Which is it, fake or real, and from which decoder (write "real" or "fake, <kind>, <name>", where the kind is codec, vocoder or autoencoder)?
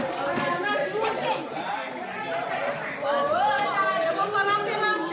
fake, vocoder, BigVGAN v2